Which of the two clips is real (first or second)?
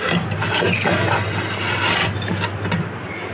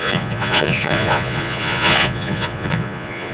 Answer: first